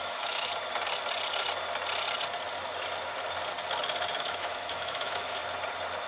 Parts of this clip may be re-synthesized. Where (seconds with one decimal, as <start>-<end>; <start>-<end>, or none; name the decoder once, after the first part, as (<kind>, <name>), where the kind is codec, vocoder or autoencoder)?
0.0-0.5 (autoencoder, DAC-VAE); 4.2-5.4